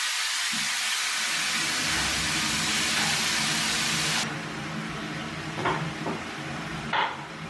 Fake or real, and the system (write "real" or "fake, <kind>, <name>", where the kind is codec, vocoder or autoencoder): real